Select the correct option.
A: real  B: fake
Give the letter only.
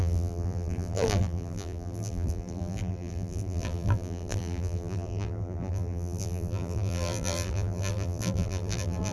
B